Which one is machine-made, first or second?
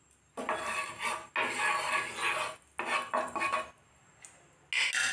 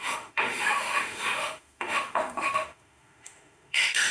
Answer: second